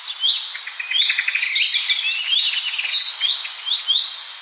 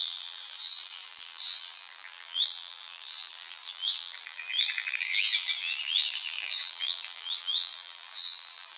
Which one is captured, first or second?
first